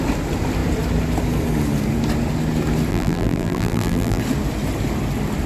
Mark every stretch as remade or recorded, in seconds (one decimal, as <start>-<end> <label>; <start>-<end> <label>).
0.0-2.9 recorded; 2.9-4.2 remade; 4.2-5.5 recorded